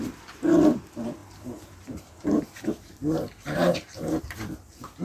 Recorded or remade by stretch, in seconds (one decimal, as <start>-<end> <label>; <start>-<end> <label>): 0.0-1.2 recorded; 1.2-4.2 remade; 4.2-5.0 recorded